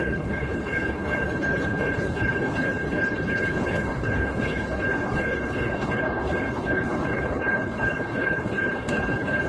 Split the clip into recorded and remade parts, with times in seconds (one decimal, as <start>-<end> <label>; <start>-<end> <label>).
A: 0.0-9.5 remade